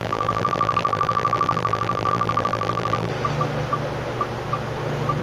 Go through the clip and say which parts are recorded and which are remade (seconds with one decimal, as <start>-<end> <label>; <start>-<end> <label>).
0.0-3.1 remade; 3.1-5.2 recorded